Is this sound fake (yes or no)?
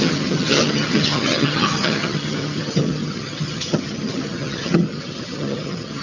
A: yes